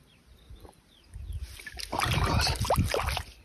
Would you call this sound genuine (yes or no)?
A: yes